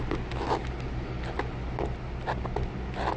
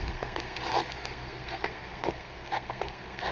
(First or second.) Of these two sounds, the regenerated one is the second